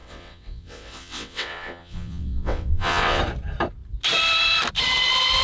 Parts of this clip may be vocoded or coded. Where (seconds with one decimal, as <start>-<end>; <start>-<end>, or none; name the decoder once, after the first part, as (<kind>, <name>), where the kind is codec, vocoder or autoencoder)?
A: 0.0-3.2 (vocoder, WaveNeXt)